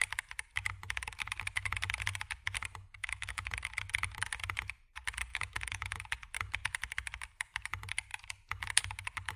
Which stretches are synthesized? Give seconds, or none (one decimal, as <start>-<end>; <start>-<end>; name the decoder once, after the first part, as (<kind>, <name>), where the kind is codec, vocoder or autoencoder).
3.0-3.5 (autoencoder, DAC-VAE); 5.3-6.0